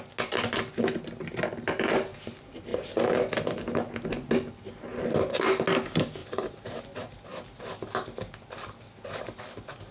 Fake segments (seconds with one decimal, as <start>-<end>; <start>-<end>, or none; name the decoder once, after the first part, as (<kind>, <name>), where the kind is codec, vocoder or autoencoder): 6.2-6.8 (vocoder, BigVGAN v2)